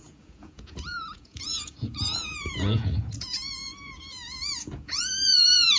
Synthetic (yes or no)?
yes